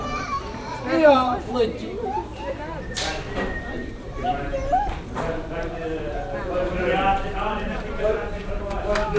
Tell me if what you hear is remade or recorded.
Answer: remade